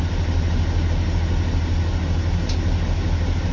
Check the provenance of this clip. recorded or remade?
recorded